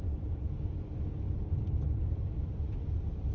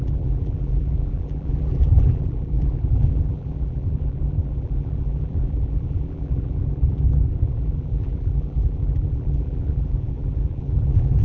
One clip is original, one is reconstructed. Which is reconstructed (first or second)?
second